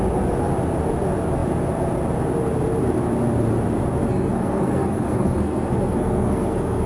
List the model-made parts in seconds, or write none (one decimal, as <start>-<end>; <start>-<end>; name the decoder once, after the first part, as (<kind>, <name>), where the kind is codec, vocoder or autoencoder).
4.1-6.9 (codec, SNAC)